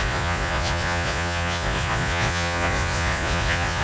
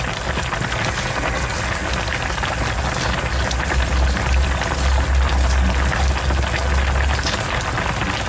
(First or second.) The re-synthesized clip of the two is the first